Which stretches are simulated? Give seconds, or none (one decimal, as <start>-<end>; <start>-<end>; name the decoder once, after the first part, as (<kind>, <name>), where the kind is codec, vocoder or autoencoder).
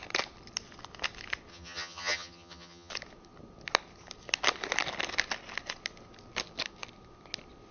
1.5-2.9 (vocoder, HiFi-GAN)